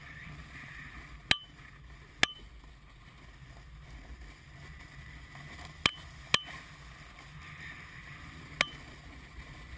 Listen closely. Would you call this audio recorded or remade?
recorded